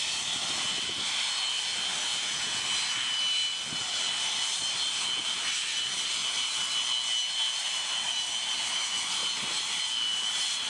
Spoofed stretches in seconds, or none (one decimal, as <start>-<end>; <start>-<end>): 2.1-2.6

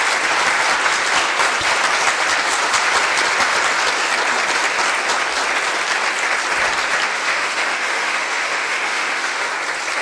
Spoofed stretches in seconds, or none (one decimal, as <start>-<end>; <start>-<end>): 7.1-9.5

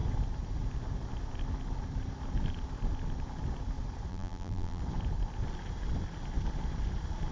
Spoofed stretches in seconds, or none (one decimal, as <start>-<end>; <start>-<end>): 4.1-4.8